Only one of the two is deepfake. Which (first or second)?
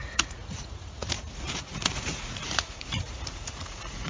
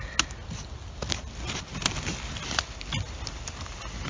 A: first